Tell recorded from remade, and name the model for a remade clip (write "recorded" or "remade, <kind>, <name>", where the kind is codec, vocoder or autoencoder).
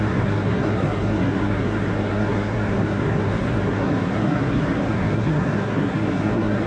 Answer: remade, codec, SNAC